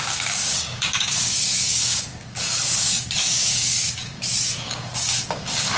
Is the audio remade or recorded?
remade